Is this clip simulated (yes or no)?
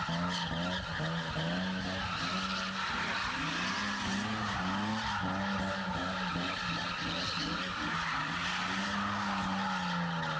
no